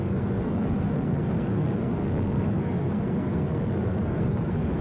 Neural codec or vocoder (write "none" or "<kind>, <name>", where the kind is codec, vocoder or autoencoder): codec, SNAC